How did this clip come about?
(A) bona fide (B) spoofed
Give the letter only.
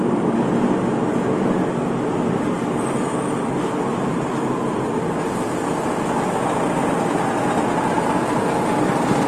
A